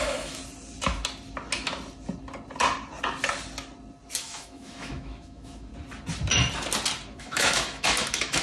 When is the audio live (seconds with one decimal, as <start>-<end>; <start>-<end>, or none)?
0.4-4.2; 5.7-7.2